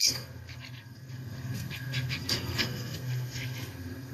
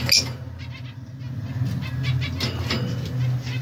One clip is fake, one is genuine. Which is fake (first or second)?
first